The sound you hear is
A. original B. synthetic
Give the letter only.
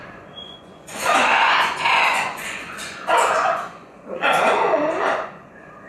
B